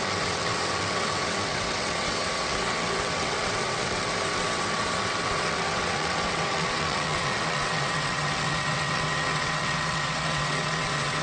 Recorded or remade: remade